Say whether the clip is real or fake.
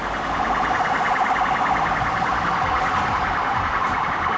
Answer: real